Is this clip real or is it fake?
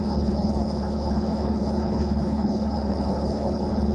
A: fake